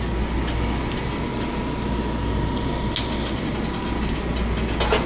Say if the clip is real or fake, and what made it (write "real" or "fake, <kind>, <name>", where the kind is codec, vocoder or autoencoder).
real